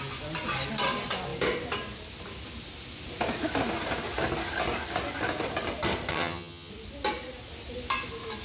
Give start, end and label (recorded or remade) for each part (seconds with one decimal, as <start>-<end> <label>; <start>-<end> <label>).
0.0-6.1 recorded; 6.1-6.7 remade; 6.7-8.4 recorded